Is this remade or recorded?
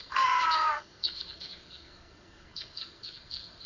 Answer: remade